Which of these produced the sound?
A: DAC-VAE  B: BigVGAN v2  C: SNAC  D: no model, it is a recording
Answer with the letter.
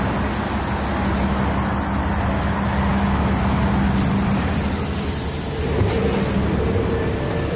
D